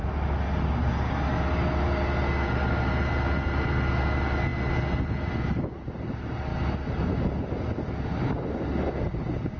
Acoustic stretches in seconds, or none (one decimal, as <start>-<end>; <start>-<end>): 0.0-9.6